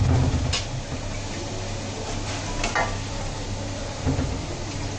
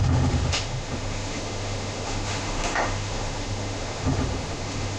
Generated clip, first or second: second